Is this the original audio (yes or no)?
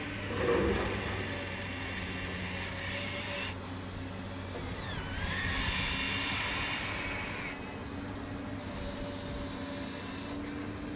yes